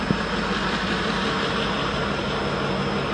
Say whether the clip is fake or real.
real